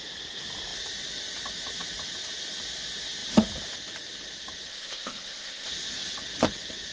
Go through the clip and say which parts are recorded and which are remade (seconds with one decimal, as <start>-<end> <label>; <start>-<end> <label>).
0.0-4.7 recorded; 4.7-5.7 remade; 5.7-6.9 recorded